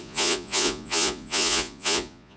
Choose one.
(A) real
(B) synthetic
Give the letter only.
B